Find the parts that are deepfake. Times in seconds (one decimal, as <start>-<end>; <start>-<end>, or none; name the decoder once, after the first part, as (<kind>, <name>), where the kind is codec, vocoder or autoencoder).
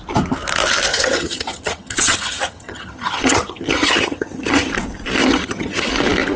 0.9-4.7 (vocoder, HiFi-GAN); 5.2-5.9